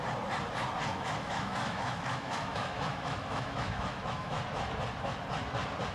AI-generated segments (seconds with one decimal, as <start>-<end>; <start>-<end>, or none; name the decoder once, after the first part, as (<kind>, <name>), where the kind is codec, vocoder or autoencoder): 0.9-4.4 (autoencoder, DAC-VAE)